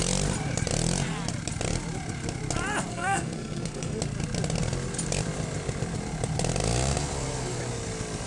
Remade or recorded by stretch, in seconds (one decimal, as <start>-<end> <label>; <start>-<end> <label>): 0.0-2.9 recorded; 2.9-4.0 remade; 4.0-8.3 recorded